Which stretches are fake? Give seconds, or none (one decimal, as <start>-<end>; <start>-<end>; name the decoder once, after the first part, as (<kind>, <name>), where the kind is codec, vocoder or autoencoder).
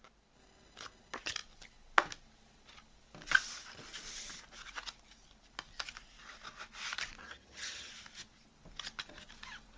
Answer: 7.2-7.9 (vocoder, HiFi-GAN)